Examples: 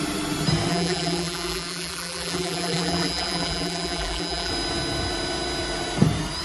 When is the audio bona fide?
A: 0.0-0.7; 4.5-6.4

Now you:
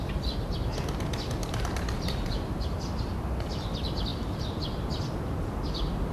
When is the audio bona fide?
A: 0.0-1.4; 2.6-4.1; 4.6-6.1

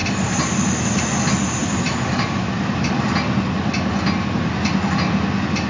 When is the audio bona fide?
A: 1.0-1.6; 2.9-5.7

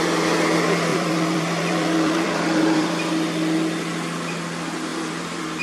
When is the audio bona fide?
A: 0.0-0.9; 3.1-4.9

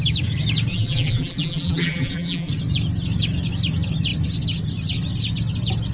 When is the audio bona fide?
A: 0.0-0.7; 2.5-5.9

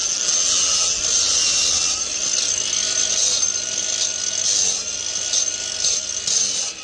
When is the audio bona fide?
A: 1.0-6.8